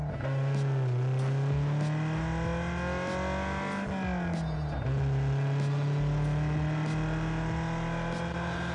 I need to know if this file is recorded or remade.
recorded